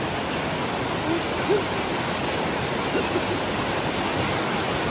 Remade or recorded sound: recorded